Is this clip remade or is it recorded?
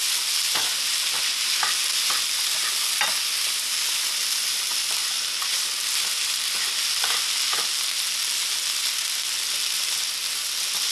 recorded